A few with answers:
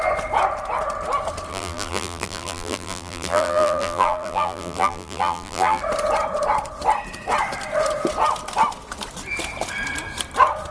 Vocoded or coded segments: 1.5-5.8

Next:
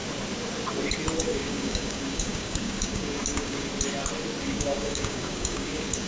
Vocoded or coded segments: 1.2-3.7; 4.4-6.1